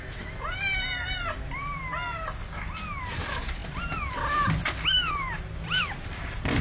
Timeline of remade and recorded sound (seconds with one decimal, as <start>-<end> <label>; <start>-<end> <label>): 0.0-1.7 remade; 1.7-3.0 recorded; 3.0-4.6 remade; 4.6-5.1 recorded; 5.1-6.6 remade